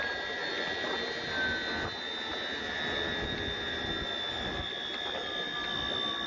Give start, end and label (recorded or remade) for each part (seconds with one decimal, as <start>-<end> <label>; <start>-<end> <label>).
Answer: 0.0-6.3 recorded